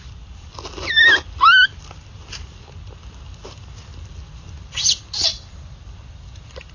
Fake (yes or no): no